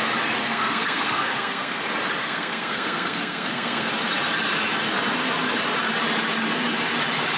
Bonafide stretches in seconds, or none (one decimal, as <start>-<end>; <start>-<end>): 0.0-0.5; 1.8-2.2; 3.9-7.4